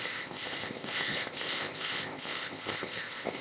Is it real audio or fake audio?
fake